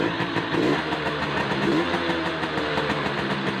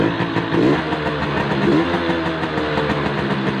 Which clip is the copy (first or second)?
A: first